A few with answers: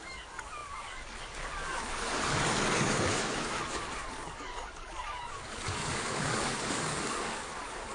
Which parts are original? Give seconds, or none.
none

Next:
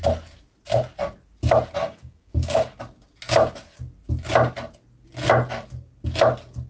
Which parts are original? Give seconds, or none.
0.0-1.8; 2.8-6.7

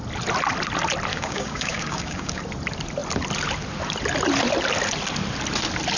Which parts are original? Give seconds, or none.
0.0-1.1; 2.4-6.0

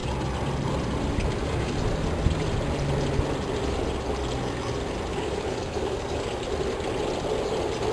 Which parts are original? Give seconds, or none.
0.0-5.1; 6.3-7.9

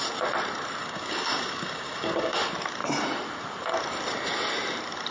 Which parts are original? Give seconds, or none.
0.0-0.8; 2.4-5.1

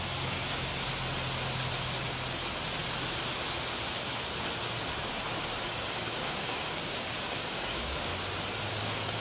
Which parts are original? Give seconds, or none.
0.7-5.6; 8.1-8.7

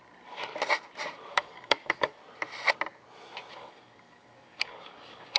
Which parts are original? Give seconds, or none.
0.0-1.3; 2.2-3.5

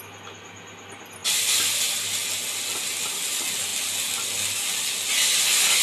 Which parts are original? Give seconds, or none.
0.0-5.8